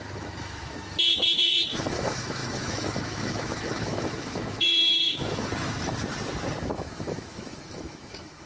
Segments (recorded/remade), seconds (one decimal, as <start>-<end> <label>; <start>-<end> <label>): 0.0-5.5 remade; 5.5-6.6 recorded; 6.6-8.5 remade